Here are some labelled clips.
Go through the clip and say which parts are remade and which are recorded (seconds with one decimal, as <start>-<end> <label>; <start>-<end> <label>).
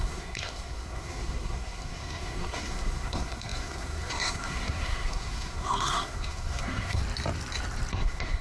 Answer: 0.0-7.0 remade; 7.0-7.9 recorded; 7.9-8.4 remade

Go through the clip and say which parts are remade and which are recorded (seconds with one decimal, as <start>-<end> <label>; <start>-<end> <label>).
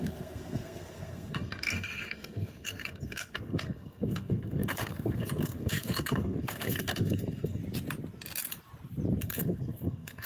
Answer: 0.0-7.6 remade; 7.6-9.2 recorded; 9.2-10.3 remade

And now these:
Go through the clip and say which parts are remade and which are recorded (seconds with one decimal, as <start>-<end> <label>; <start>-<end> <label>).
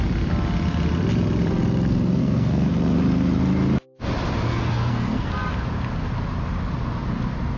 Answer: 0.0-2.2 recorded; 2.2-2.7 remade; 2.7-4.5 recorded; 4.5-5.3 remade; 5.3-7.6 recorded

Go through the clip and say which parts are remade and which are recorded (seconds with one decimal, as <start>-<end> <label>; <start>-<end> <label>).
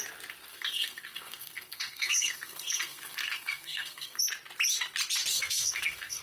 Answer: 0.0-0.5 recorded; 0.5-4.2 remade; 4.2-5.3 recorded; 5.3-6.2 remade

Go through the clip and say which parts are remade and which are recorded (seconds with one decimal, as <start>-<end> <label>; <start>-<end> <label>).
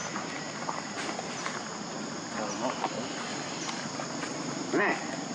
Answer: 0.0-5.3 recorded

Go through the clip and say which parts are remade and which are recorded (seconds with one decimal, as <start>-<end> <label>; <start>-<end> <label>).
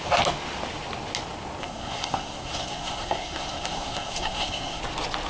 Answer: 0.0-1.6 recorded; 1.6-4.8 remade; 4.8-5.3 recorded